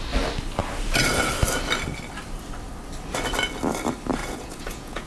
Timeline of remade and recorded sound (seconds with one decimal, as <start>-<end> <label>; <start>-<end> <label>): 0.0-4.2 recorded; 4.2-5.1 remade